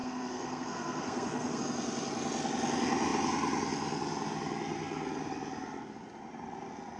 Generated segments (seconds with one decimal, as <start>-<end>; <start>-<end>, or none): 0.0-1.6